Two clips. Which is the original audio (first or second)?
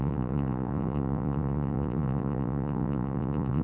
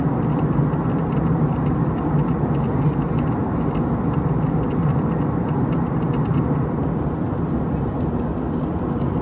second